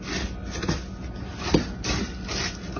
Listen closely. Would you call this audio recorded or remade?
recorded